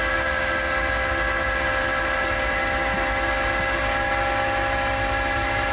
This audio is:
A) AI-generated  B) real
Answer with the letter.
B